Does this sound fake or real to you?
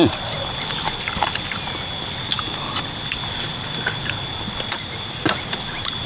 real